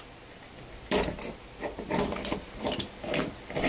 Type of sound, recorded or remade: recorded